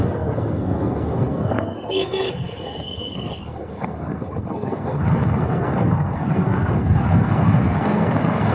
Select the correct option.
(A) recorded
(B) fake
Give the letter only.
B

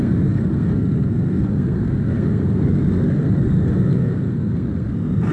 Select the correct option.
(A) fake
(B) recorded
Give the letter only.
A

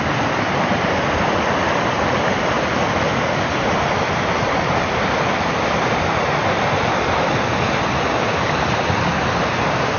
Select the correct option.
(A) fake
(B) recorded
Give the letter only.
B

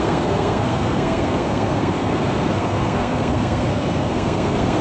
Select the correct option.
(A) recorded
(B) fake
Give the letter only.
B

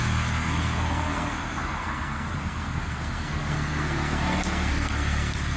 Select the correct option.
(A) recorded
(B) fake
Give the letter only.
B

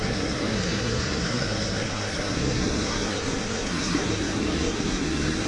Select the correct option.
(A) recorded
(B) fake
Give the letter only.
B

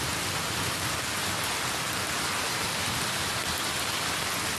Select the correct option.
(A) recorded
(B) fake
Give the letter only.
A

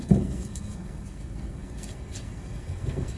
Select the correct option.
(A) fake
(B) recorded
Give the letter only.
A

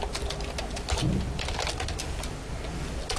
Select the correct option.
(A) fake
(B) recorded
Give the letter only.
B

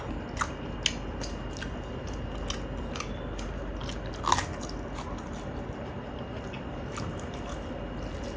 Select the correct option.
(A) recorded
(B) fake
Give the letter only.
A